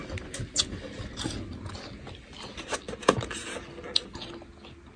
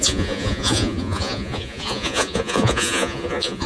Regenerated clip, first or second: second